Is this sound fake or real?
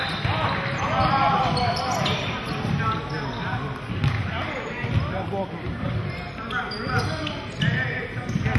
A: real